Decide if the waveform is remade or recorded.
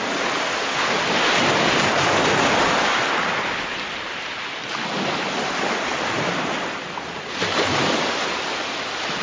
recorded